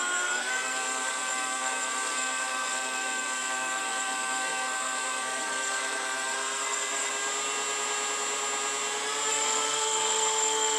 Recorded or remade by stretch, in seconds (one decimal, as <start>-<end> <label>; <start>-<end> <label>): 0.0-7.1 remade; 7.1-9.3 recorded; 9.3-10.8 remade